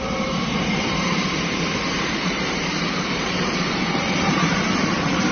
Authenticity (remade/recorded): remade